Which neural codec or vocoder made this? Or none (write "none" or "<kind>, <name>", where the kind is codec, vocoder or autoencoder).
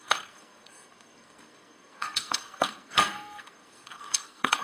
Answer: codec, SNAC